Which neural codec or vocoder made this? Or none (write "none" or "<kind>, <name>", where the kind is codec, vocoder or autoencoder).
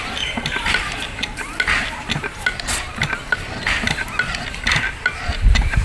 none